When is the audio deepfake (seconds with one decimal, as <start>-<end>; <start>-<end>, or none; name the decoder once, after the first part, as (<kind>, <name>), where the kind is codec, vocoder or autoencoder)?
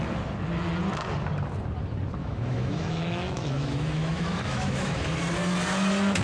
2.2-5.2 (autoencoder, DAC-VAE)